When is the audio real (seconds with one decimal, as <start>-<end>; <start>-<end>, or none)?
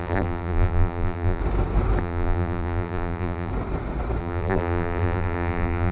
1.4-2.0; 3.5-4.2